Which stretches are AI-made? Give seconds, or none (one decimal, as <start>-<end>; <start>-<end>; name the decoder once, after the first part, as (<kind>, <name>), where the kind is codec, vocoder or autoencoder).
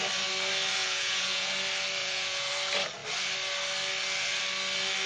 0.8-1.5 (vocoder, Vocos); 2.0-2.5